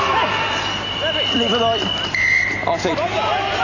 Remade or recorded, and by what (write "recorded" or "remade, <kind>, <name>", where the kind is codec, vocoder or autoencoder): recorded